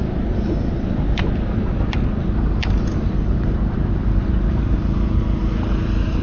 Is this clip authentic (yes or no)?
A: yes